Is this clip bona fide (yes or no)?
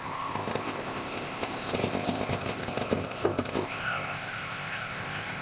no